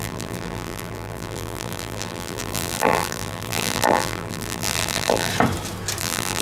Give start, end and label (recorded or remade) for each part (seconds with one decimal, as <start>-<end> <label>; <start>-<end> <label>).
0.0-5.3 remade; 5.3-6.0 recorded; 6.0-6.4 remade